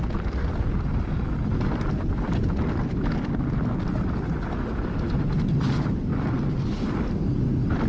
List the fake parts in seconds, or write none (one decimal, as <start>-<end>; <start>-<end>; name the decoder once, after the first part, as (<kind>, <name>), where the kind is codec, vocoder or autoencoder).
none